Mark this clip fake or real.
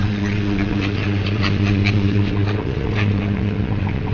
fake